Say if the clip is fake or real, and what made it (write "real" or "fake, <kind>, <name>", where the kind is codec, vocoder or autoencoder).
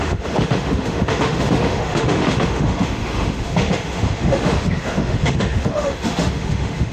fake, autoencoder, DAC-VAE